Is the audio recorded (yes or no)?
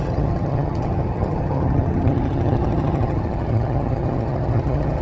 no